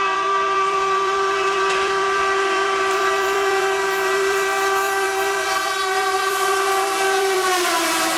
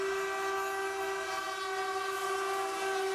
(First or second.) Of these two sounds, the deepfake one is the first